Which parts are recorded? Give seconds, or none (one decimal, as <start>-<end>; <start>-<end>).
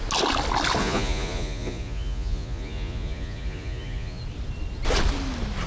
0.0-0.8; 4.2-5.7